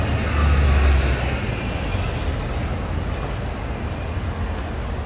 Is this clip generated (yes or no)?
no